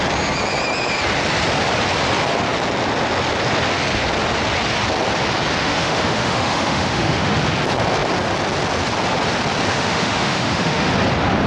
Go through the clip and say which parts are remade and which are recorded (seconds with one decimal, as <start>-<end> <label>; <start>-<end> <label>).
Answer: 0.0-5.6 recorded; 5.6-7.4 remade; 7.4-9.7 recorded; 9.7-10.9 remade; 10.9-11.5 recorded